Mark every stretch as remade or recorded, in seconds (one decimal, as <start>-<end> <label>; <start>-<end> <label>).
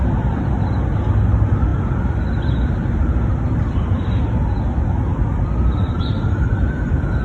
0.0-7.2 recorded